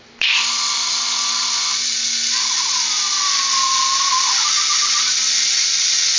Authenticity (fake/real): real